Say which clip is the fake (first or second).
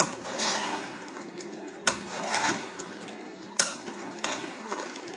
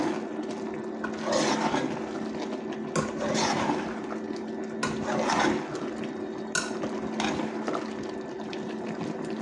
first